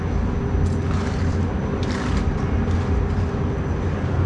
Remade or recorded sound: recorded